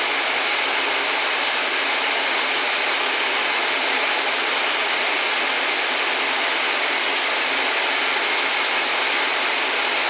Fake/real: real